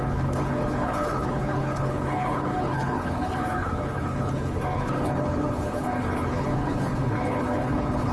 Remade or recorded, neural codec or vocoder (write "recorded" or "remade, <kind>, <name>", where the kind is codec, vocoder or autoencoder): remade, codec, HILCodec